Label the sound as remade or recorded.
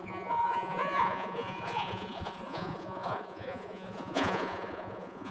remade